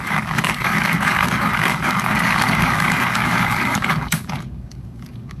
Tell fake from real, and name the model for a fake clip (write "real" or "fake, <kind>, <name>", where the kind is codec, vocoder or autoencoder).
fake, codec, DAC